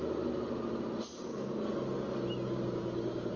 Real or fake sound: real